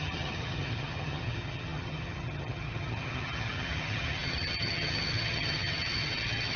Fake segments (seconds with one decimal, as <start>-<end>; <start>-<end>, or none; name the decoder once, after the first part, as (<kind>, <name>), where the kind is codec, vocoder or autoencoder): 0.0-6.6 (vocoder, HiFi-GAN)